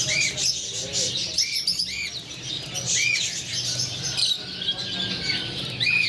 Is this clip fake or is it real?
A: real